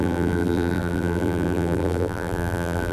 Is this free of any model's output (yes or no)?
no